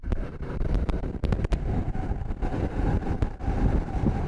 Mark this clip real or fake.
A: fake